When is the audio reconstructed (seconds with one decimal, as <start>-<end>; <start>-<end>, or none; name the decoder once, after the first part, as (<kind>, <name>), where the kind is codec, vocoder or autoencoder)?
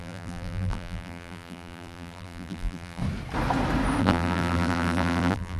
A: 0.0-3.0 (vocoder, BigVGAN v2); 4.0-5.6